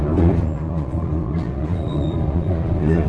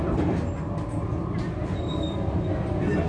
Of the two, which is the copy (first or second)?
first